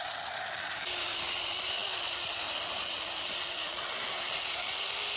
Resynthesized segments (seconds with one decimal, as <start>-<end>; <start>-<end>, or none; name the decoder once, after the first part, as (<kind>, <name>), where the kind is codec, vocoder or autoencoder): none